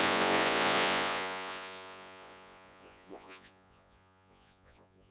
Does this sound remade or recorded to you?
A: remade